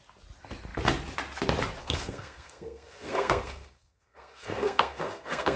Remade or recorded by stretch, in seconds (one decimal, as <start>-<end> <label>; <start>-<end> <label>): 0.0-1.8 recorded; 1.8-5.6 remade